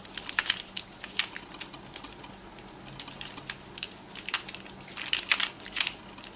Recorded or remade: recorded